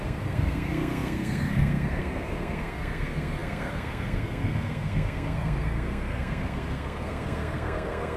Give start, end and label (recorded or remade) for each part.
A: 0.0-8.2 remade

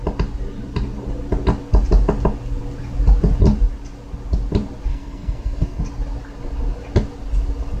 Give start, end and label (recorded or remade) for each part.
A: 0.0-4.9 recorded; 4.9-5.8 remade; 5.8-7.8 recorded

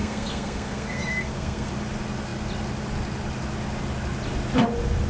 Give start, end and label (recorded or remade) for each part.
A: 0.0-1.7 remade; 1.7-5.1 recorded

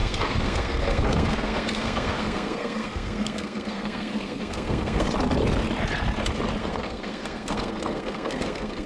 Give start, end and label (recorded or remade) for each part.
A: 0.0-5.1 remade; 5.1-6.6 recorded; 6.6-8.9 remade

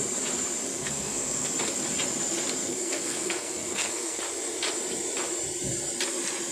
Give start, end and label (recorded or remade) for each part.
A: 0.0-0.7 recorded; 0.7-1.5 remade; 1.5-2.6 recorded; 2.6-4.2 remade; 4.2-6.5 recorded

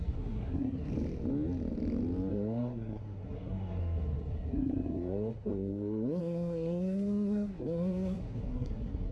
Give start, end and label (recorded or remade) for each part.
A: 0.0-0.9 remade; 0.9-2.3 recorded; 2.3-9.1 remade

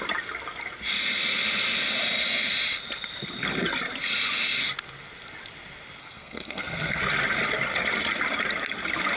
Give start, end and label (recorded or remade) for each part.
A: 0.0-6.0 recorded; 6.0-7.0 remade; 7.0-9.2 recorded

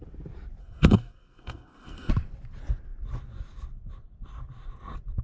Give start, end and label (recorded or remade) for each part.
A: 0.0-0.6 recorded; 0.6-2.1 remade; 2.1-5.2 recorded